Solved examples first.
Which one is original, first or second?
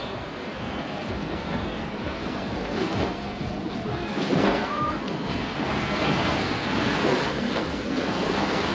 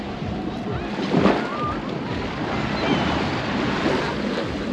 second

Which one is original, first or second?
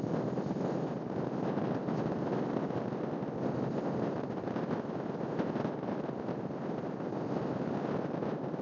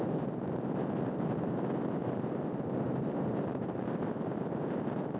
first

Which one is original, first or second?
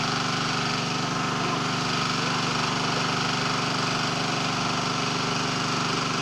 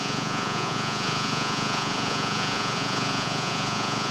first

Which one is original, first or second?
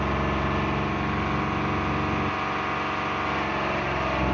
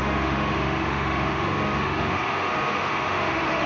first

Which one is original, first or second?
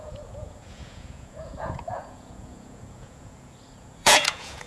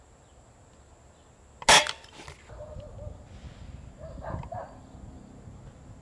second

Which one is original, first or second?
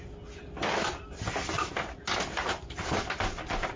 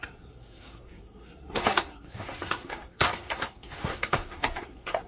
first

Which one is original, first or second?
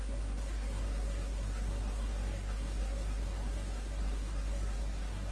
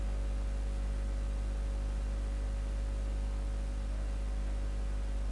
second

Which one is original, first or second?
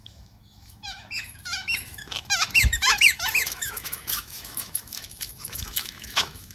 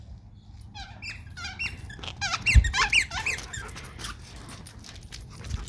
second